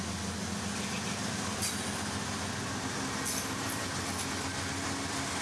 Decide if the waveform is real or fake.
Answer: real